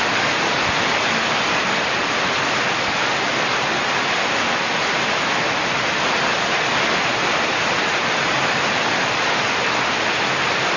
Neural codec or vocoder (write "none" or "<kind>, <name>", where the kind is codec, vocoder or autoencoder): none